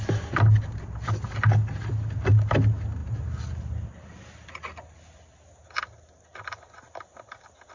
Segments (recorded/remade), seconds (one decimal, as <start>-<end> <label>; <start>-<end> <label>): 0.0-7.7 recorded